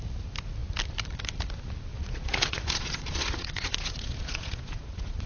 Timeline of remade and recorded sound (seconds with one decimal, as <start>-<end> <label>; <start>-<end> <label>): 0.0-1.9 recorded; 1.9-5.3 remade